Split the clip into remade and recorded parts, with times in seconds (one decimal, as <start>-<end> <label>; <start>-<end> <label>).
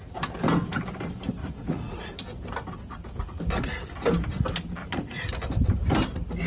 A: 0.0-1.4 recorded; 1.4-2.1 remade; 2.1-4.8 recorded; 4.8-5.3 remade; 5.3-6.5 recorded